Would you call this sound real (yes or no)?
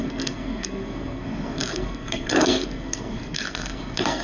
no